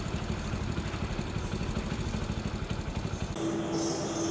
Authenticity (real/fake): real